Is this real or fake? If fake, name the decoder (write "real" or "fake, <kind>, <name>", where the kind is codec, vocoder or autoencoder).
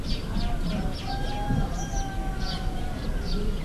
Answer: real